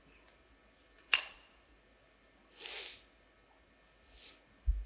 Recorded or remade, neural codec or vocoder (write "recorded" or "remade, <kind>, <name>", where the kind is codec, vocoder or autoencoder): recorded